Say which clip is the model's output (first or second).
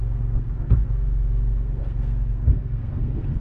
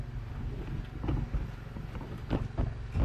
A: first